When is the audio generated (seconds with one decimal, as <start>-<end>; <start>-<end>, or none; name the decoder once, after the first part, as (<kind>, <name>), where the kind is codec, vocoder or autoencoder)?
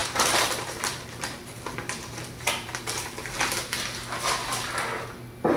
0.0-3.4 (vocoder, BigVGAN v2)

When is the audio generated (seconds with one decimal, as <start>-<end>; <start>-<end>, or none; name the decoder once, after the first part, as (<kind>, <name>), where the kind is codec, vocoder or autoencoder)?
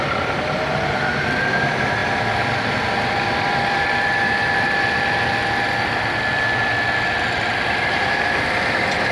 2.0-5.3 (vocoder, BigVGAN v2)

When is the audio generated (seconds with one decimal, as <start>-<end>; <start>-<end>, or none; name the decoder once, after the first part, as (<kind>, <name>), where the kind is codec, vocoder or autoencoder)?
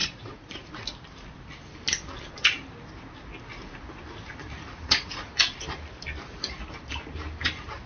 0.0-0.7 (vocoder, Vocos); 4.7-5.3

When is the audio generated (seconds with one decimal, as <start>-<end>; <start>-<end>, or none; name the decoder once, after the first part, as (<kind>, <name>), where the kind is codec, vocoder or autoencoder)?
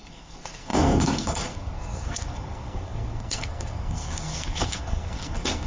0.0-5.7 (codec, SNAC)